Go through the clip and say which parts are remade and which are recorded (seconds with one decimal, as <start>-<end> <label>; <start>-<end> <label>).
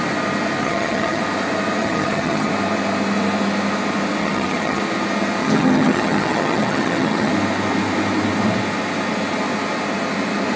0.0-0.6 recorded; 0.6-1.2 remade; 1.2-1.8 recorded; 1.8-2.5 remade; 2.5-4.2 recorded; 4.2-4.8 remade; 4.8-5.4 recorded; 5.4-7.3 remade; 7.3-10.6 recorded